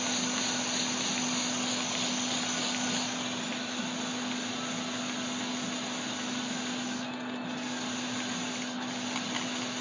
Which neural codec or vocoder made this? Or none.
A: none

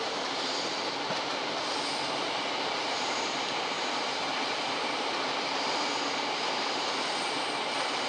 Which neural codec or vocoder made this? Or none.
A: none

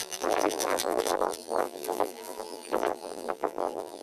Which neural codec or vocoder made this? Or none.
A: vocoder, BigVGAN v2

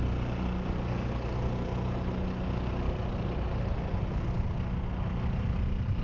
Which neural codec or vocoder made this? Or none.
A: none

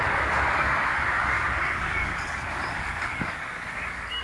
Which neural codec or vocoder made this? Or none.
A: codec, DAC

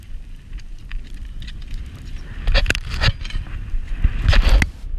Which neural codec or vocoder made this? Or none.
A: none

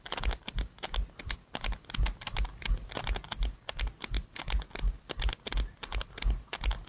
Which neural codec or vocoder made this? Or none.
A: none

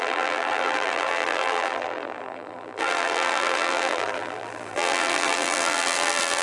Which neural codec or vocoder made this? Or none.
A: vocoder, BigVGAN v2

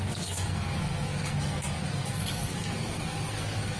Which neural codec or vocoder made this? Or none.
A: codec, SNAC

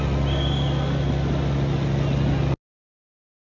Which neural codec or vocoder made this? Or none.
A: none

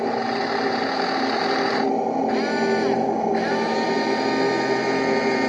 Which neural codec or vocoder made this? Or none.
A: none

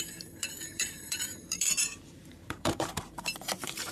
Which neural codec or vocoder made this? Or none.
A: vocoder, BigVGAN v2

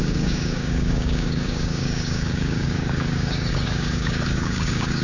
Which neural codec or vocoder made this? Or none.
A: codec, DAC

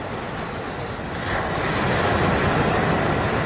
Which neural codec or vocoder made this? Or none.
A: none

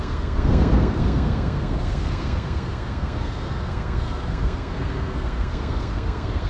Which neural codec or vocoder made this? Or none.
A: codec, SNAC